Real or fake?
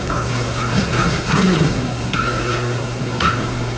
fake